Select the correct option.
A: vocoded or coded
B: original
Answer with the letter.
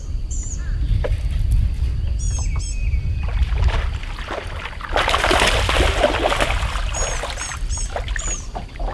B